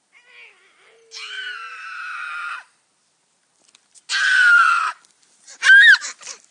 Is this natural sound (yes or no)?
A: yes